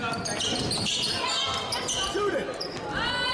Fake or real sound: real